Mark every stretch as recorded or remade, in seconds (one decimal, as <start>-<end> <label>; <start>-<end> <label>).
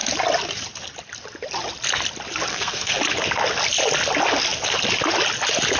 0.0-2.5 recorded; 2.5-3.0 remade; 3.0-5.8 recorded